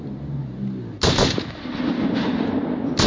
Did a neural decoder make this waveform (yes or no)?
no